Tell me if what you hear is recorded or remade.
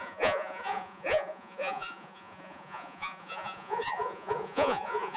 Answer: remade